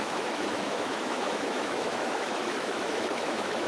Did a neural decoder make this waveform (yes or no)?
yes